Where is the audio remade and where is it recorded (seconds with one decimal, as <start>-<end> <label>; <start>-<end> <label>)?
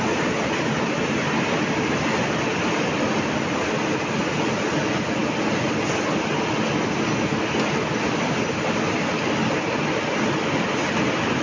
0.0-11.4 recorded